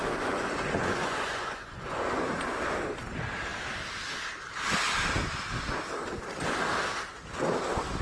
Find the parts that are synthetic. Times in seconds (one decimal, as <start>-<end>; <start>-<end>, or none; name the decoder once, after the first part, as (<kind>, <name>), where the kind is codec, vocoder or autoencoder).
0.0-2.3 (vocoder, Vocos)

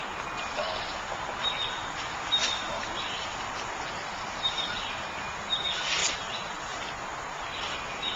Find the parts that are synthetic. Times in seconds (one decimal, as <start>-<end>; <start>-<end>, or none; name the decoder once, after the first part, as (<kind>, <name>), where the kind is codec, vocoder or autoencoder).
2.4-3.4 (vocoder, BigVGAN v2); 6.0-7.2

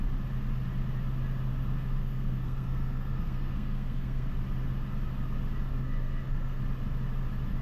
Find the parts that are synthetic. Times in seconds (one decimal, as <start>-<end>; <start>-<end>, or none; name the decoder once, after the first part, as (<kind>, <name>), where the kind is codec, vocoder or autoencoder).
2.0-4.3 (codec, SNAC); 5.8-6.6

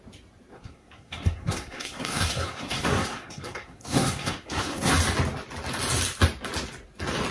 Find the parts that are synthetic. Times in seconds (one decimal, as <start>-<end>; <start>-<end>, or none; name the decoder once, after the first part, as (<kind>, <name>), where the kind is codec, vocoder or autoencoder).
0.5-4.9 (codec, SNAC)

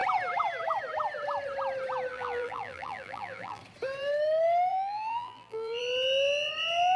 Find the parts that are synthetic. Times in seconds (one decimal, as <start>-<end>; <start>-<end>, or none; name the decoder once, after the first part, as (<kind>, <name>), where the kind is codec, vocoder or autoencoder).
2.1-3.6 (vocoder, BigVGAN v2); 4.7-5.8

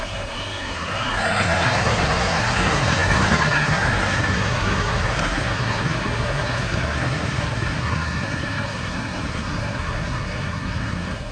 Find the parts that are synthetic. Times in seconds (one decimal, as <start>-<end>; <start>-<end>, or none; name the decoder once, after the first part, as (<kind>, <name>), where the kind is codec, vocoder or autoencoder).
0.0-11.3 (codec, SNAC)

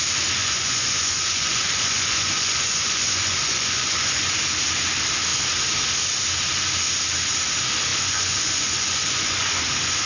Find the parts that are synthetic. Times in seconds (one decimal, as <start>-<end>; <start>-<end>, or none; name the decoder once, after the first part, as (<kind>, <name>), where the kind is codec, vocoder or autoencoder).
0.4-4.4 (vocoder, Vocos); 7.9-9.6

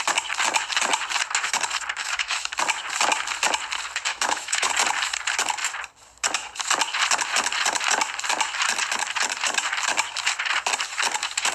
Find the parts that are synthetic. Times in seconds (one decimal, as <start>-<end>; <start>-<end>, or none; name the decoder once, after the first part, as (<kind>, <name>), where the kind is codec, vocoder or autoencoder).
2.0-2.5 (autoencoder, DAC-VAE); 4.1-4.7